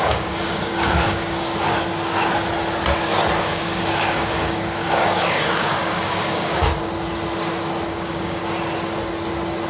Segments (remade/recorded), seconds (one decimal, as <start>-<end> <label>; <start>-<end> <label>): 0.0-1.5 remade; 1.5-3.4 recorded; 3.4-6.6 remade; 6.6-7.9 recorded; 7.9-8.4 remade; 8.4-9.7 recorded